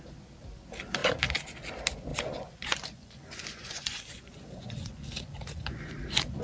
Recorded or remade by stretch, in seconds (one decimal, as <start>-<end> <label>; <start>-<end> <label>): 0.0-2.1 recorded; 2.1-5.9 remade; 5.9-6.4 recorded